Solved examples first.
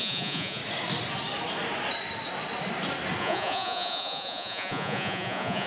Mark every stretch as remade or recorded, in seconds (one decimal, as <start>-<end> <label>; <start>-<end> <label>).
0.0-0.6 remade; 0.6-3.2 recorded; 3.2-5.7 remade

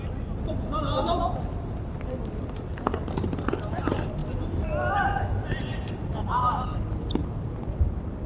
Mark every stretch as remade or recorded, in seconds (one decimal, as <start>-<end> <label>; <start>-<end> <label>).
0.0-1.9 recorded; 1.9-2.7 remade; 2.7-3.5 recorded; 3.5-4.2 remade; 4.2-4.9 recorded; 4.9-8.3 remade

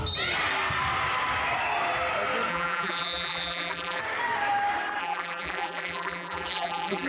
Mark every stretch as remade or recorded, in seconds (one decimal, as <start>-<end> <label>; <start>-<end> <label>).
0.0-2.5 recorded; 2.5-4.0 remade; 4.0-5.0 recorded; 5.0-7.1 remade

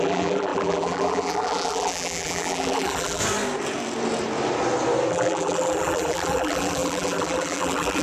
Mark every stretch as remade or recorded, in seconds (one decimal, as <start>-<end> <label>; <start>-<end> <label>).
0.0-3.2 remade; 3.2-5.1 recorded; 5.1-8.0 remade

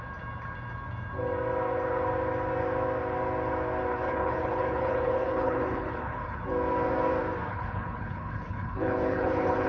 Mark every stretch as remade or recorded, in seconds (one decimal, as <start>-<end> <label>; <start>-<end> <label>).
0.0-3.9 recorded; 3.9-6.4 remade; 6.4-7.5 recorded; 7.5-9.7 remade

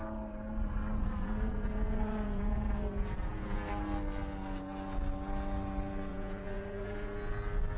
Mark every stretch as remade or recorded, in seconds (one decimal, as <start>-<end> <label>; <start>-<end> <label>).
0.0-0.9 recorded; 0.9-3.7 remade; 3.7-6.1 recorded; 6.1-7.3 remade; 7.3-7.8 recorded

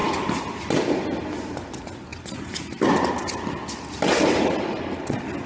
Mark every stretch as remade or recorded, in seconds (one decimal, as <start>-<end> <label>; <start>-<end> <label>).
0.0-5.5 recorded

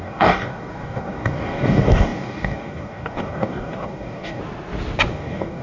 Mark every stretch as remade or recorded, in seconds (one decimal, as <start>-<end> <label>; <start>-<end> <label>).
0.0-4.4 remade; 4.4-5.1 recorded; 5.1-5.6 remade